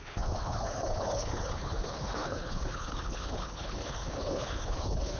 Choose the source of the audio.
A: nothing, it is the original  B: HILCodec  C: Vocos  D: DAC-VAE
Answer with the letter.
B